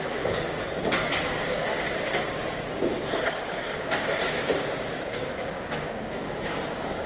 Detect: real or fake fake